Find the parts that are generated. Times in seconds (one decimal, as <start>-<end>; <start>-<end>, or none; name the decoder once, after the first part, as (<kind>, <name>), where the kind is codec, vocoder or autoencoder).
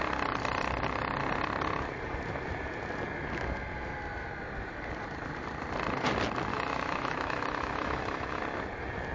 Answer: 6.5-8.4 (autoencoder, DAC-VAE)